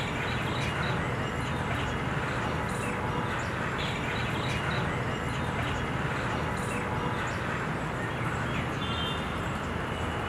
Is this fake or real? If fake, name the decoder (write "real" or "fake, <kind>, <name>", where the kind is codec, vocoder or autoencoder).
real